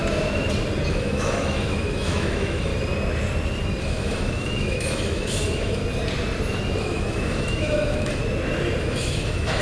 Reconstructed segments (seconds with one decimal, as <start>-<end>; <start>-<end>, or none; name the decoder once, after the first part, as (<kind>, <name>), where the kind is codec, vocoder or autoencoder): 0.9-2.7 (autoencoder, DAC-VAE); 3.8-5.8; 6.8-8.2; 8.8-9.6